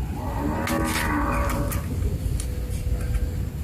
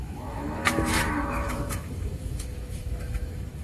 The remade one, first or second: second